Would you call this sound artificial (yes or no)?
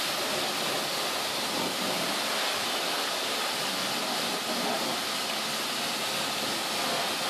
no